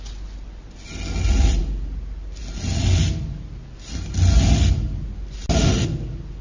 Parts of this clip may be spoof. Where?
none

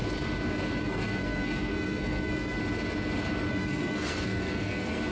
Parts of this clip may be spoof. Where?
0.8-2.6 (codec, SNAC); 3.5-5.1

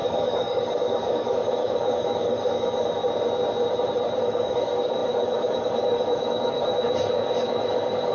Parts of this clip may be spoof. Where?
0.0-3.0 (codec, DAC); 4.2-8.1

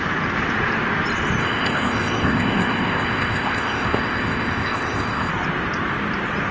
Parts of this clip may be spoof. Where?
1.4-5.3 (codec, ZipCodec)

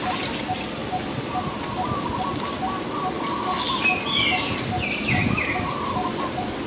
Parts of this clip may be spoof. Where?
none

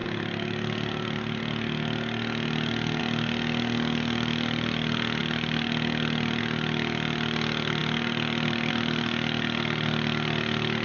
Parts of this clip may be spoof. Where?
none